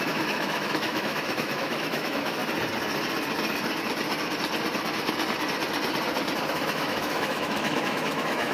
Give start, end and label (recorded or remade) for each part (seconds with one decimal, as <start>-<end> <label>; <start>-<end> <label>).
0.0-2.4 remade; 2.4-6.5 recorded; 6.5-8.5 remade